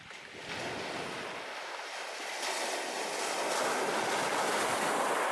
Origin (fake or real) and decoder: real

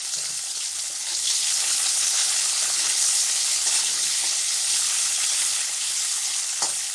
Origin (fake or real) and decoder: fake, codec, HILCodec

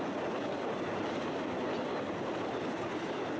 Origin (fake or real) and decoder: real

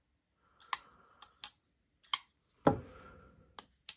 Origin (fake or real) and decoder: real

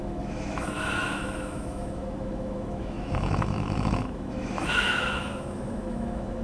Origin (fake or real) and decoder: fake, autoencoder, DAC-VAE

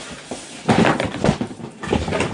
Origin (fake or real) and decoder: real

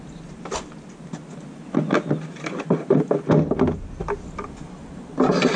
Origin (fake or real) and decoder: real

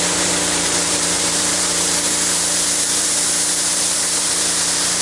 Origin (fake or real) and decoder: fake, vocoder, BigVGAN v2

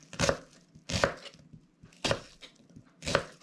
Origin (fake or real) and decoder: real